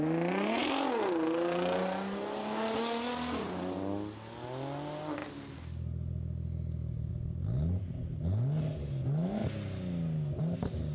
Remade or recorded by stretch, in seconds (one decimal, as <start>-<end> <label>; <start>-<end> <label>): 0.0-10.9 recorded